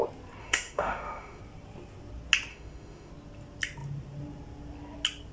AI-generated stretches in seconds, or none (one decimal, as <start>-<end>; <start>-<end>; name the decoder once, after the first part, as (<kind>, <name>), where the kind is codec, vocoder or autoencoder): 0.4-1.4 (autoencoder, DAC-VAE); 2.5-3.1